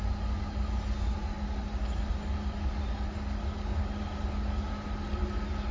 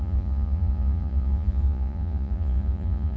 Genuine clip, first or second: first